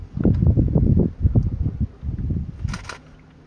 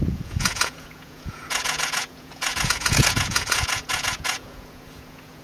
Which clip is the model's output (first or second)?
second